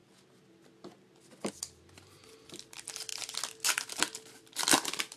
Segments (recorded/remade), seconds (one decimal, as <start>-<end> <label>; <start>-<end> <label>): 0.0-1.5 recorded; 1.5-3.1 remade; 3.1-4.3 recorded; 4.3-5.2 remade